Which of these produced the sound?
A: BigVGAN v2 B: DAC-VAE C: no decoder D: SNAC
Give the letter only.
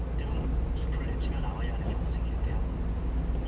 C